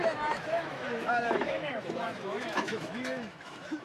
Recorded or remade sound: remade